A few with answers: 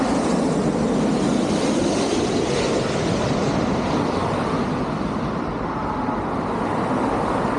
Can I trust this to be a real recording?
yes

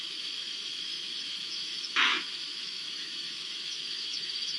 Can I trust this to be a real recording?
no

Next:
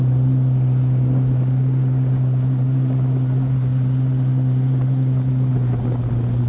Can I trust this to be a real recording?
yes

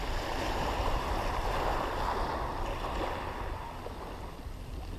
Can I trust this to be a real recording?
yes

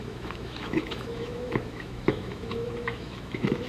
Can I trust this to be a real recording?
no